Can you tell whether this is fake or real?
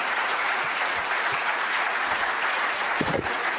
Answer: fake